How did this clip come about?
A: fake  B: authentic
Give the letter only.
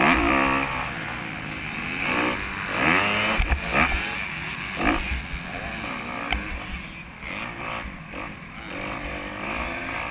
B